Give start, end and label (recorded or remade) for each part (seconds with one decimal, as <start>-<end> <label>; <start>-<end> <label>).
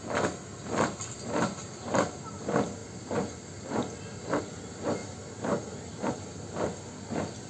0.0-7.5 recorded